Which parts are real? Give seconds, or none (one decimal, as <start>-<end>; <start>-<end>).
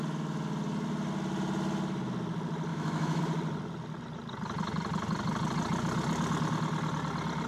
0.0-2.7; 3.2-7.5